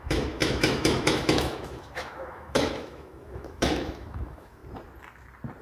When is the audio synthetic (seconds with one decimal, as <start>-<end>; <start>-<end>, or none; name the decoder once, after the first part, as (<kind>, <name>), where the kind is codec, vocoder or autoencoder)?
0.0-4.6 (autoencoder, DAC-VAE)